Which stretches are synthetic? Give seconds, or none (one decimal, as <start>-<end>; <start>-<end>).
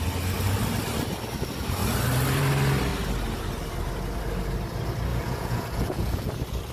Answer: 5.1-6.3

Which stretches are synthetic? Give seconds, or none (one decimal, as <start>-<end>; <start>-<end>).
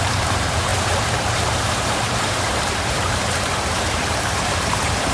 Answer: 0.0-5.1